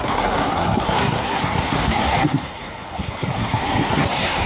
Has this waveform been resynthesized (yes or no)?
yes